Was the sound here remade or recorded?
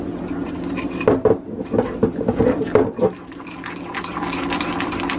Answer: recorded